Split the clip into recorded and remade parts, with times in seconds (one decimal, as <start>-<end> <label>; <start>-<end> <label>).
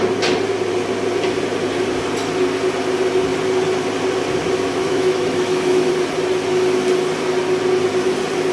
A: 0.0-4.8 recorded; 4.8-5.9 remade; 5.9-8.5 recorded